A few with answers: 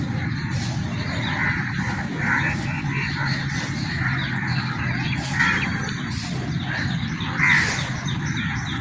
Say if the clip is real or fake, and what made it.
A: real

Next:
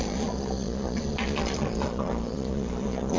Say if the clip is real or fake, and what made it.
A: fake, vocoder, Vocos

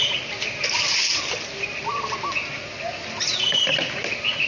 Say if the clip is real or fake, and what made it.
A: real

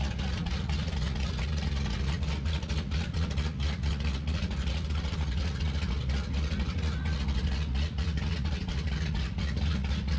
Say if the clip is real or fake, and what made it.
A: fake, vocoder, Vocos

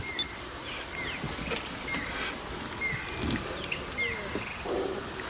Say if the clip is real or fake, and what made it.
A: real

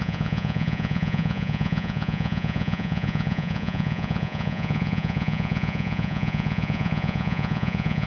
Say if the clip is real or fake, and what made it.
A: fake, vocoder, Vocos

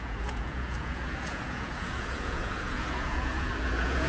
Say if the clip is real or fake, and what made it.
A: fake, vocoder, Vocos